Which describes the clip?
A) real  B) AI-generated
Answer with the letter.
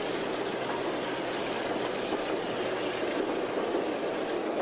A